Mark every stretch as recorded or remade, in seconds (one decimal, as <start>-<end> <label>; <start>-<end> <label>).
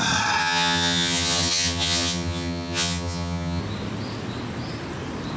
0.0-0.4 recorded; 0.4-3.6 remade; 3.6-5.4 recorded